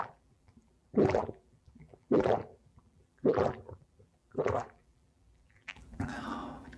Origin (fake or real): fake